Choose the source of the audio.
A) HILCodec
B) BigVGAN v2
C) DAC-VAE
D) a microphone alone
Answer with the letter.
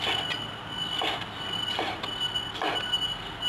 D